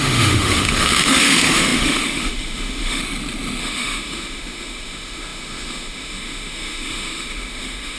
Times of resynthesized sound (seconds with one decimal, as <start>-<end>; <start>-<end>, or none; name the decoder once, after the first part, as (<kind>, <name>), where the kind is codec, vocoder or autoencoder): 0.0-3.0 (autoencoder, DAC-VAE); 3.6-8.0